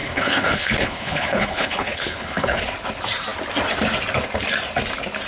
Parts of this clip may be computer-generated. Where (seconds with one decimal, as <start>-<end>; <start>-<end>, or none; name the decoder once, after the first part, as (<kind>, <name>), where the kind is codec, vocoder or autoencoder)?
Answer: 0.0-2.6 (codec, HILCodec)